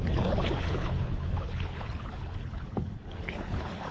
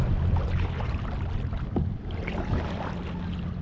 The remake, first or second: first